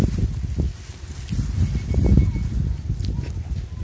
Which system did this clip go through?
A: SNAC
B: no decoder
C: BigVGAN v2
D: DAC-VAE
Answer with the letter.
B